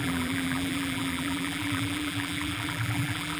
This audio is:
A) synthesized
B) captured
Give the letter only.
A